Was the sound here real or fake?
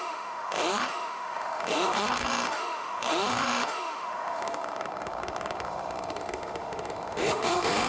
fake